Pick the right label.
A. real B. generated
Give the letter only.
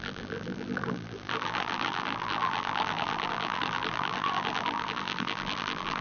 B